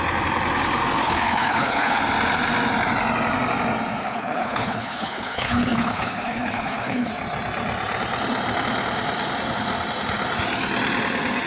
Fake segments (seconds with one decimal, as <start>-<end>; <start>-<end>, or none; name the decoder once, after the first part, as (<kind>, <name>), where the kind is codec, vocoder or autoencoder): 1.0-2.0 (codec, HILCodec); 4.0-7.1